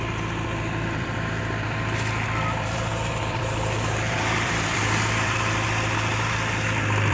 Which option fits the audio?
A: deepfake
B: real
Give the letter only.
A